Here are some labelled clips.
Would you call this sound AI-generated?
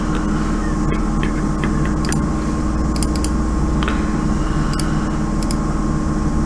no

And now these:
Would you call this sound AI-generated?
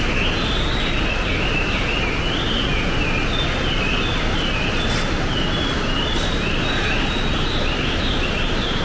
no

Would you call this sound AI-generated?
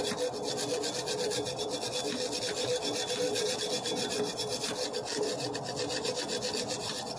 no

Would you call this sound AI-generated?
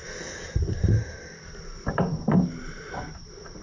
no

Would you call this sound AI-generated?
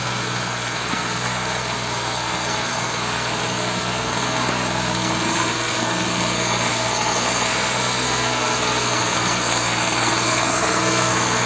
yes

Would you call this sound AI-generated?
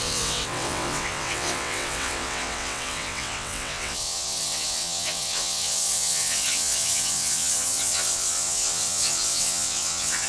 yes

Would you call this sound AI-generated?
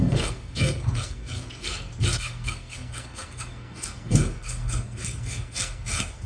yes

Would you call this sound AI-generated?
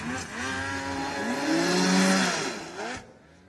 no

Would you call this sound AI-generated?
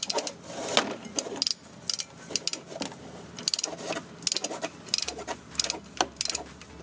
no